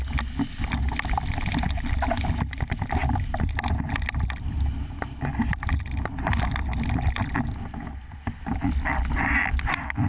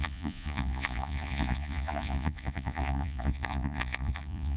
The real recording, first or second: first